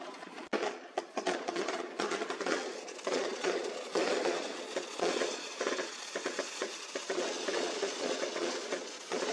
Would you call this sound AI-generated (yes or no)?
yes